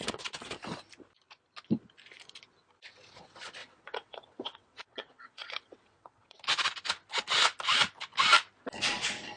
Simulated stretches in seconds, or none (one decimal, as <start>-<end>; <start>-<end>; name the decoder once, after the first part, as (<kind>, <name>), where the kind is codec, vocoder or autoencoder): 3.6-6.4 (vocoder, WaveNeXt)